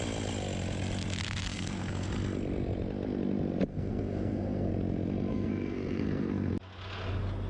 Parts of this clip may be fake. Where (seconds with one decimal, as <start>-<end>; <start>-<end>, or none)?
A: 1.5-2.1; 3.7-4.7; 5.3-6.5